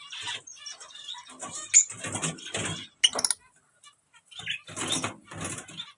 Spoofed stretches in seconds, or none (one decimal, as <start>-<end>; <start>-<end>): none